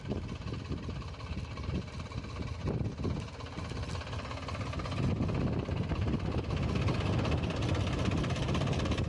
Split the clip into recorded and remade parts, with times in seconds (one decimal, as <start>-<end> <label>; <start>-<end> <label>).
0.0-9.1 recorded